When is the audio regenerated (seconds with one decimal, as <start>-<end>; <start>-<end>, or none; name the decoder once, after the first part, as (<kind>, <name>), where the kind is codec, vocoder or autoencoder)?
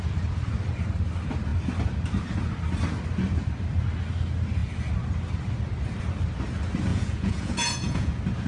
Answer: 6.9-8.1 (vocoder, Vocos)